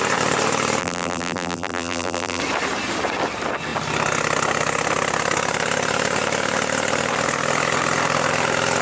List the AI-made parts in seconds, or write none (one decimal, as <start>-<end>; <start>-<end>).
0.8-2.4